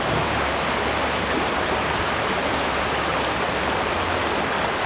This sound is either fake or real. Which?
real